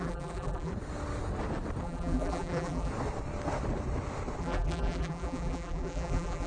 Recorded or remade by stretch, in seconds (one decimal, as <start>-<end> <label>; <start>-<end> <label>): 0.0-0.7 remade; 0.7-1.8 recorded; 1.8-2.9 remade; 2.9-4.4 recorded; 4.4-6.5 remade